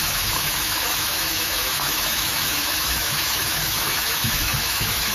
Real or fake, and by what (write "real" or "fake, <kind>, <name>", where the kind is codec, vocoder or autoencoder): fake, autoencoder, DAC-VAE